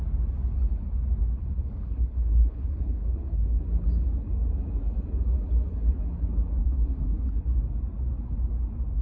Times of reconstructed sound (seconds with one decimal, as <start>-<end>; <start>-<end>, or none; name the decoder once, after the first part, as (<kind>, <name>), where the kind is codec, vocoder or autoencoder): 1.4-3.6 (codec, HILCodec); 6.6-7.4